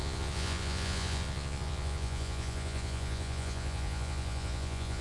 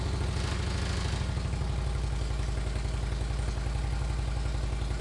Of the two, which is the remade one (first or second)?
first